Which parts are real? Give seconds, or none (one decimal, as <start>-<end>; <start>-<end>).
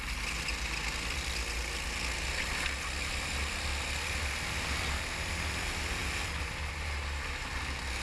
0.0-6.0; 6.7-8.0